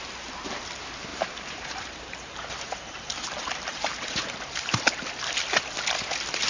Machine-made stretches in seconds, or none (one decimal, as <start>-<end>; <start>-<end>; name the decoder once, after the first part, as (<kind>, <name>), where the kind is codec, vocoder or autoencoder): 1.1-4.8 (vocoder, BigVGAN v2)

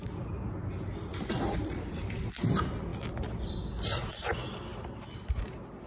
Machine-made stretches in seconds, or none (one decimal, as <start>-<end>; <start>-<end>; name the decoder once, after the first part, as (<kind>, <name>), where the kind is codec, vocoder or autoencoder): none

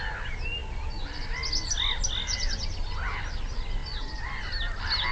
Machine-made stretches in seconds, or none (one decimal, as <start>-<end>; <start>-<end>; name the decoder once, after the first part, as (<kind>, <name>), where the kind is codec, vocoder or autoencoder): none

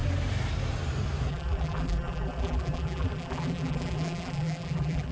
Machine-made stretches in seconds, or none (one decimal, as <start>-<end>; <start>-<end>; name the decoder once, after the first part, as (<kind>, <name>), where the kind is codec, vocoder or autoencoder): 1.3-5.1 (vocoder, BigVGAN v2)